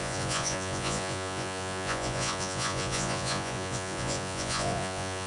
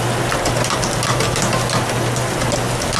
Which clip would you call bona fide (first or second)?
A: second